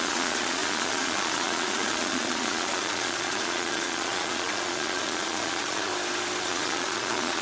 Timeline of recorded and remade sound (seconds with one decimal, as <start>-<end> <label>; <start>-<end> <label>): 0.0-5.9 remade; 5.9-6.4 recorded; 6.4-7.4 remade